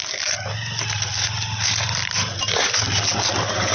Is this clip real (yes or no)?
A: yes